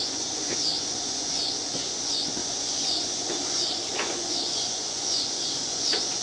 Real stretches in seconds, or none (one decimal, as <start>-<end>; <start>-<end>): none